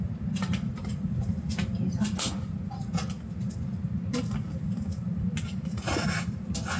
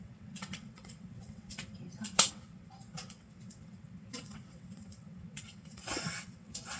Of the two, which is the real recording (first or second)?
first